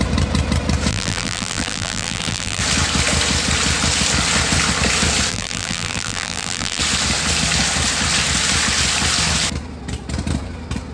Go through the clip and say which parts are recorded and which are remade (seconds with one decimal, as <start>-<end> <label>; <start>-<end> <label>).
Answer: 0.0-0.9 recorded; 0.9-2.6 remade; 2.6-5.3 recorded; 5.3-6.8 remade; 6.8-10.9 recorded